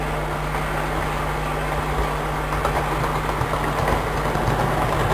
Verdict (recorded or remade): recorded